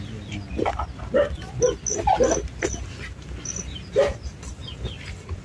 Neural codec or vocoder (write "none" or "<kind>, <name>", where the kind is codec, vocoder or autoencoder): none